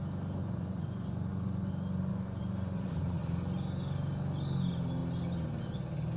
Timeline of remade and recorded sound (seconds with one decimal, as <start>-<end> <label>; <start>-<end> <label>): 0.0-0.4 recorded; 0.4-1.7 remade; 1.7-2.1 recorded; 2.1-3.2 remade; 3.2-6.2 recorded